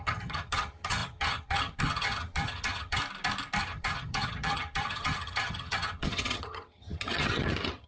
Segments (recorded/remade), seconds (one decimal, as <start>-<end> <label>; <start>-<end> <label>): 0.0-3.0 remade; 3.0-3.6 recorded; 3.6-7.9 remade